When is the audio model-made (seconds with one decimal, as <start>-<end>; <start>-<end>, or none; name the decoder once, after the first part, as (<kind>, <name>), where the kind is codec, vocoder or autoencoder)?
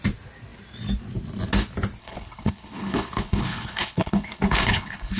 2.0-5.2 (codec, HILCodec)